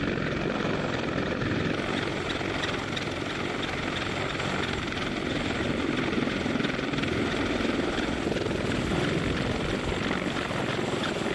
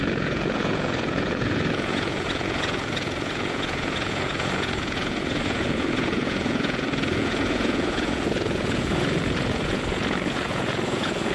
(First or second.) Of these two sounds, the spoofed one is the second